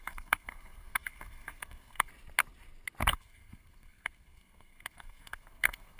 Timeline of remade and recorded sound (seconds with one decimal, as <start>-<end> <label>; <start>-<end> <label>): 0.0-2.1 remade; 2.1-3.1 recorded; 3.1-6.0 remade